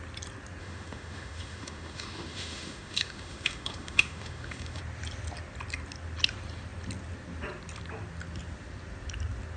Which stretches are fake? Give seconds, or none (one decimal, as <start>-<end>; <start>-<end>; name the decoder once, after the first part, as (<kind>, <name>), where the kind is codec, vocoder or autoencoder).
0.6-4.8 (autoencoder, DAC-VAE)

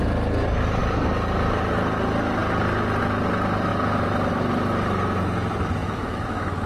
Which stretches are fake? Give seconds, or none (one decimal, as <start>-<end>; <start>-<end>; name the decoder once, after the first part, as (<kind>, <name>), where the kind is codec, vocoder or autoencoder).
5.8-6.7 (autoencoder, DAC-VAE)

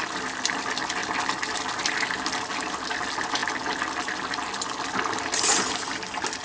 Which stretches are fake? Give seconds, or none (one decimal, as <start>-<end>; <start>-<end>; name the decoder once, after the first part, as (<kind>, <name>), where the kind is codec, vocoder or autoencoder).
none

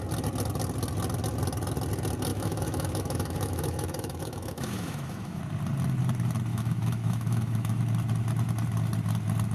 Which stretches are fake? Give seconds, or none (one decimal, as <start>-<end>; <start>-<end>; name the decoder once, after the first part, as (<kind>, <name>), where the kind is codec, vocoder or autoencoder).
2.3-5.4 (autoencoder, DAC-VAE); 6.5-7.8

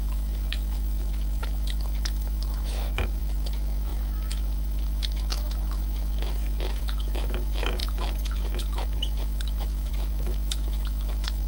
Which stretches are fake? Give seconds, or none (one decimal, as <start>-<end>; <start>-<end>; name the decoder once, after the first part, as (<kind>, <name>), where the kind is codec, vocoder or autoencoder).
0.0-11.5 (autoencoder, DAC-VAE)

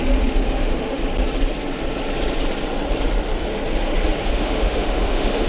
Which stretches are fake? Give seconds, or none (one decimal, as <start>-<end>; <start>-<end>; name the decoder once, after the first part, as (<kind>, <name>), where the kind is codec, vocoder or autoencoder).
0.0-1.0 (autoencoder, DAC-VAE); 4.3-5.5

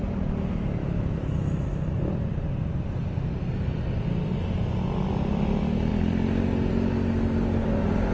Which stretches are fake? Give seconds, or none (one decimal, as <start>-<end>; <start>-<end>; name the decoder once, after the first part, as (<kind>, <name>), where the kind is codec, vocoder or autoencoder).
0.8-2.1 (autoencoder, DAC-VAE)